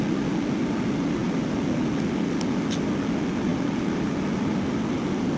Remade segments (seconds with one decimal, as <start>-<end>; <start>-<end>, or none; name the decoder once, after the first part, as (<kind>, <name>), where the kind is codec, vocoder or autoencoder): none